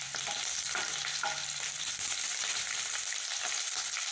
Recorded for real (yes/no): yes